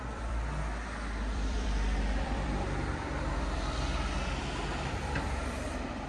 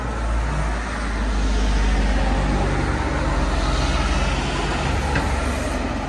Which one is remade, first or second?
first